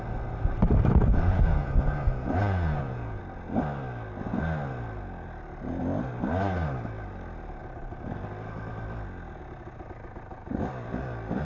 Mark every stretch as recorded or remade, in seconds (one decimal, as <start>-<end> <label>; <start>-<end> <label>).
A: 0.0-1.1 recorded; 1.1-3.2 remade; 3.2-11.4 recorded